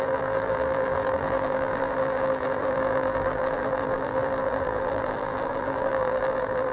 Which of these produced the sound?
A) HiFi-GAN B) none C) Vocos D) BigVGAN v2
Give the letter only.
D